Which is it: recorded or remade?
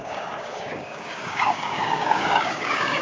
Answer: remade